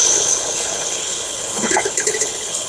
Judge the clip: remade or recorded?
remade